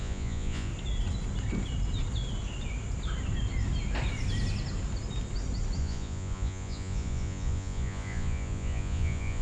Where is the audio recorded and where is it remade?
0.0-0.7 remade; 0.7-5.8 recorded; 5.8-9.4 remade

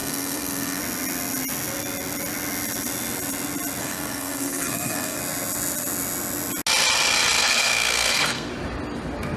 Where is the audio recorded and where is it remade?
0.0-0.8 remade; 0.8-3.8 recorded; 3.8-5.2 remade; 5.2-7.4 recorded; 7.4-8.5 remade; 8.5-9.4 recorded

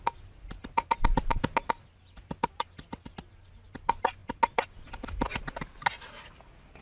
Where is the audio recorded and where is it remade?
0.0-6.8 recorded

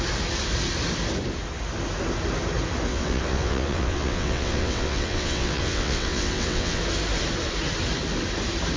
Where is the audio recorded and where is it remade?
0.0-2.9 recorded; 2.9-6.8 remade; 6.8-8.8 recorded

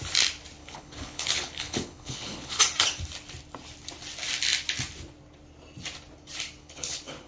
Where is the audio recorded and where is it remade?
0.0-0.6 recorded; 0.6-2.6 remade; 2.6-6.6 recorded; 6.6-7.3 remade

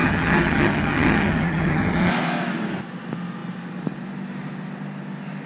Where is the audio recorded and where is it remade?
0.0-2.1 remade; 2.1-5.5 recorded

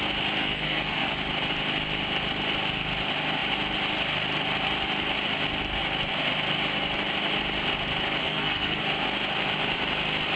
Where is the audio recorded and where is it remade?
0.0-0.4 recorded; 0.4-1.1 remade; 1.1-8.2 recorded; 8.2-8.8 remade; 8.8-10.4 recorded

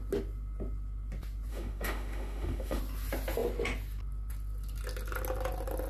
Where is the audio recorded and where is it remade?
0.0-1.5 recorded; 1.5-2.8 remade; 2.8-5.9 recorded